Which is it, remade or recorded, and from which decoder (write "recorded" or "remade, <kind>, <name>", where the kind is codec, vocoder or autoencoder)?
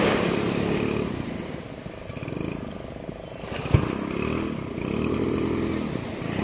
recorded